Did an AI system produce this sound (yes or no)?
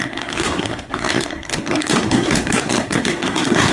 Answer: yes